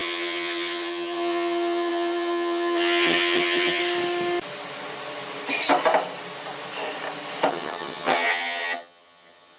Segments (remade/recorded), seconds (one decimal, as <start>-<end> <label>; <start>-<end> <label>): 0.0-3.8 remade; 3.8-7.5 recorded; 7.5-9.6 remade

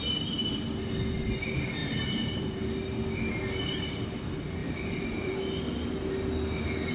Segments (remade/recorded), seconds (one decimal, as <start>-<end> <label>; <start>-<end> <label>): 0.0-1.8 recorded; 1.8-2.5 remade; 2.5-4.6 recorded; 4.6-5.3 remade; 5.3-6.9 recorded

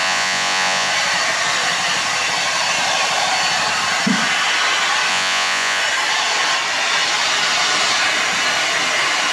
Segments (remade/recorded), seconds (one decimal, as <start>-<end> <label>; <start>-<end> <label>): 0.0-0.9 remade; 0.9-5.1 recorded; 5.1-5.8 remade; 5.8-9.3 recorded